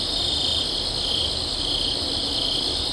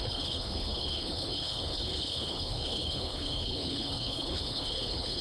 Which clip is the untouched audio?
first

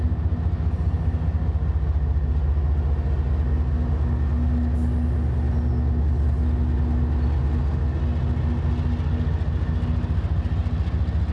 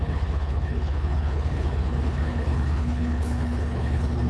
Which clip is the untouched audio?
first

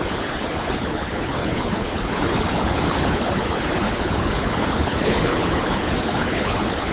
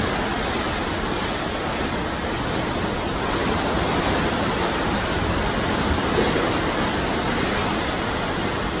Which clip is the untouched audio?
second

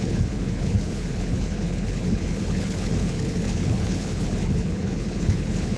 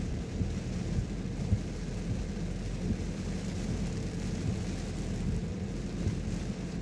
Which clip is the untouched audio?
second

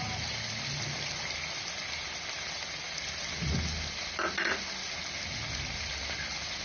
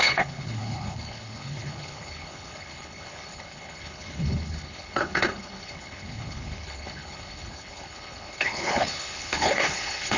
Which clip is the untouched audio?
first